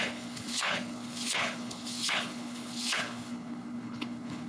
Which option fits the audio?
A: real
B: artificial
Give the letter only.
B